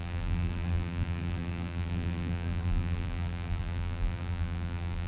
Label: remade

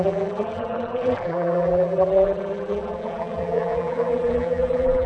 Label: remade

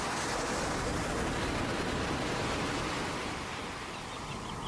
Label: recorded